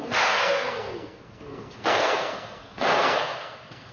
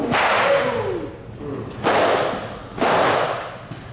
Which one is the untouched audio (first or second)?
second